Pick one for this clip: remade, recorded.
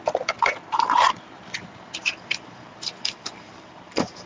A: remade